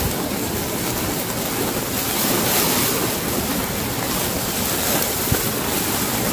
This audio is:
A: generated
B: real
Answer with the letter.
B